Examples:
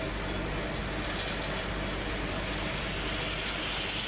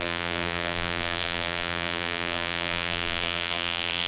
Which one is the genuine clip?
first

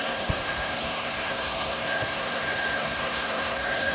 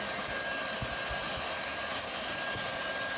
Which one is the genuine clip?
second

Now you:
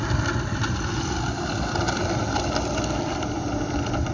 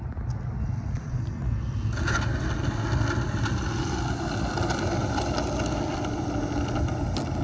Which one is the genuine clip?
second